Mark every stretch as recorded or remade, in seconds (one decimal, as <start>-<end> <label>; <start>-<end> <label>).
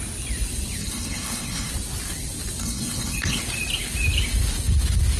0.0-0.8 recorded; 0.8-1.7 remade; 1.7-2.6 recorded; 2.6-3.4 remade; 3.4-5.2 recorded